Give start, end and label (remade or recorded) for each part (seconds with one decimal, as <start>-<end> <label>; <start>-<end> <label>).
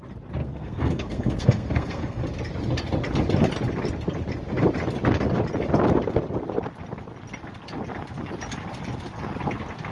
0.0-0.4 recorded; 0.4-2.2 remade; 2.2-9.9 recorded